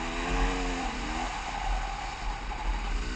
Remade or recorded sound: recorded